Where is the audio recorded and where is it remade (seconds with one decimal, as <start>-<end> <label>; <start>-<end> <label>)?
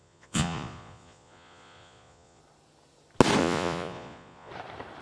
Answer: 0.0-2.4 remade; 2.4-3.4 recorded; 3.4-4.5 remade; 4.5-5.0 recorded